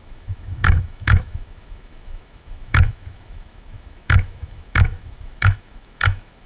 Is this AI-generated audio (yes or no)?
yes